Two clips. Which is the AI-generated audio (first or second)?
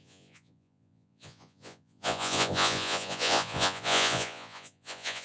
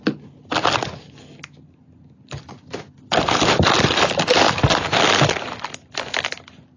first